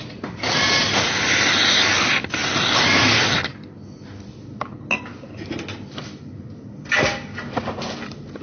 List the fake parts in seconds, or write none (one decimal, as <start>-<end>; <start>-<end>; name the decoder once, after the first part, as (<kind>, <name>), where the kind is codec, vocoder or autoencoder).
none